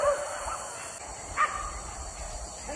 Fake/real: real